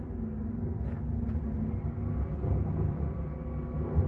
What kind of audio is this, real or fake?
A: real